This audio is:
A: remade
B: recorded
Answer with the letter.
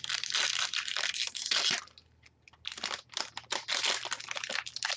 B